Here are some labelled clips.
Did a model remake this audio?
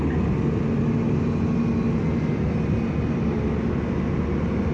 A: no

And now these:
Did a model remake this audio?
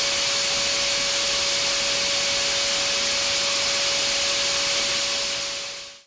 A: no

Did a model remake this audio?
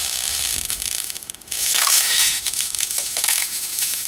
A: yes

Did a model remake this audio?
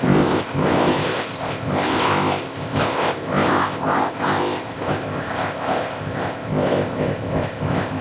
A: yes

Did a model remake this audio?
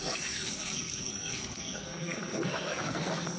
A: yes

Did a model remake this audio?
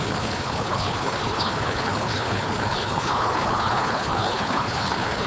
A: yes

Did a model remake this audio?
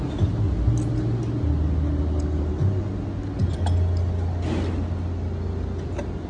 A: no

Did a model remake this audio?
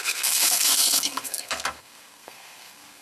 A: yes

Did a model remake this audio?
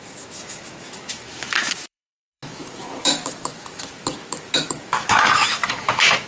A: yes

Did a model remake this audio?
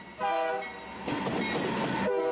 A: no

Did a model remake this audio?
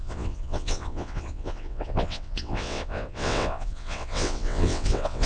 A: yes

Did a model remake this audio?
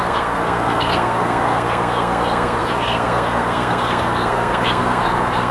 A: yes